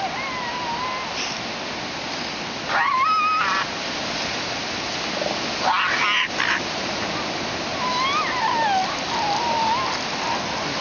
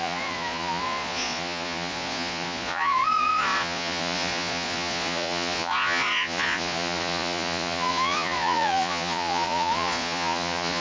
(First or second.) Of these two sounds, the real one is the first